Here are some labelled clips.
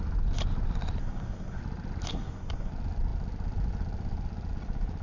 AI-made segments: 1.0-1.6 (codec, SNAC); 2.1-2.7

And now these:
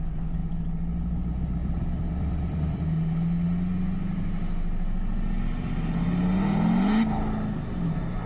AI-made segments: 1.6-2.8 (vocoder, BigVGAN v2)

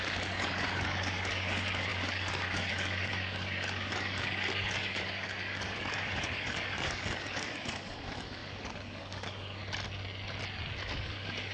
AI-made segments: 0.0-9.6 (codec, DAC); 10.9-11.5

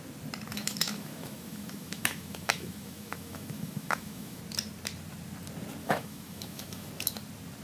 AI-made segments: 0.5-4.4 (autoencoder, DAC-VAE); 5.8-6.9